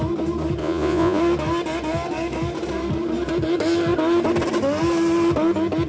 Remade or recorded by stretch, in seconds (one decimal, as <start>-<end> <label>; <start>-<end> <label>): 0.0-0.6 recorded; 0.6-1.2 remade; 1.2-5.9 recorded